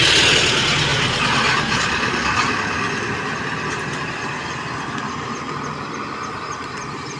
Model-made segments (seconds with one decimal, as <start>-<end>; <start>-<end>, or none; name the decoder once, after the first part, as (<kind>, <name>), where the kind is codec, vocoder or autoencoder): none